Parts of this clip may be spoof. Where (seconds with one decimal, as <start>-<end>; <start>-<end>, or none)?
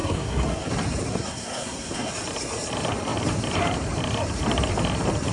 0.0-0.7; 1.1-2.1